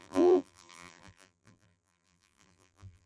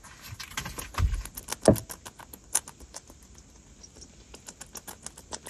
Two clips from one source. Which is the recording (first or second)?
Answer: second